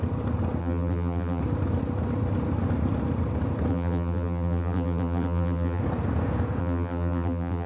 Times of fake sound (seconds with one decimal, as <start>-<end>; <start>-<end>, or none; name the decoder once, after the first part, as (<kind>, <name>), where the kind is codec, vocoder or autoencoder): 0.6-1.4 (vocoder, BigVGAN v2); 3.7-5.8; 6.6-7.7